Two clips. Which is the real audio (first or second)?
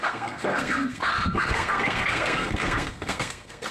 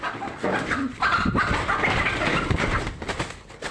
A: second